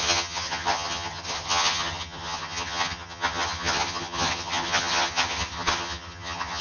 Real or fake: fake